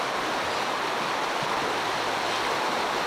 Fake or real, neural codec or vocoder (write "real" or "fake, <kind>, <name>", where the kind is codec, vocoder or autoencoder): real